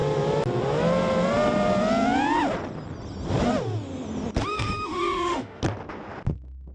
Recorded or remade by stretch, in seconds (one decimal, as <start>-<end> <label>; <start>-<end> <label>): 0.0-4.5 recorded; 4.5-5.6 remade; 5.6-6.7 recorded